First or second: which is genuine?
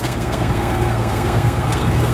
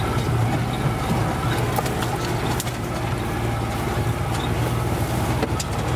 second